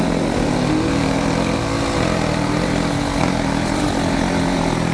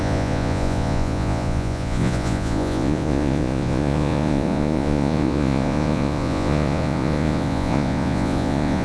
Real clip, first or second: first